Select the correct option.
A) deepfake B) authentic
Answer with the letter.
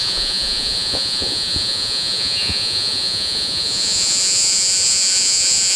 A